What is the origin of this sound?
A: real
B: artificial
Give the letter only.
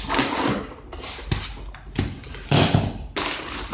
A